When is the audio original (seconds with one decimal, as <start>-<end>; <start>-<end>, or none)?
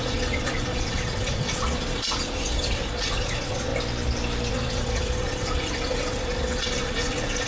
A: 3.7-4.5